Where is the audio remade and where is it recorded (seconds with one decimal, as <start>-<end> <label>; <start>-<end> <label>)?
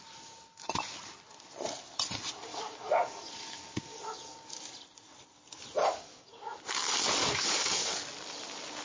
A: 0.0-2.5 recorded; 2.5-4.7 remade; 4.7-5.8 recorded; 5.8-6.6 remade; 6.6-7.2 recorded; 7.2-7.9 remade; 7.9-8.8 recorded